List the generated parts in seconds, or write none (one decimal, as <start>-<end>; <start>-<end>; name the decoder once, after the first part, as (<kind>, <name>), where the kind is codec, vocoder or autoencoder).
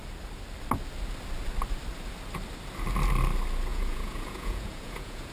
3.7-5.3 (vocoder, Vocos)